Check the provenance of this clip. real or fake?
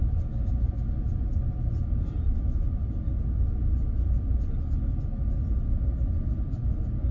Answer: real